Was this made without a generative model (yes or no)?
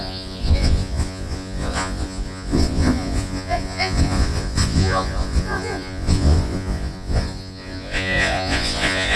no